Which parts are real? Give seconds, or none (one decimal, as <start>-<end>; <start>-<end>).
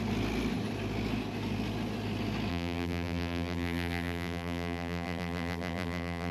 0.0-2.5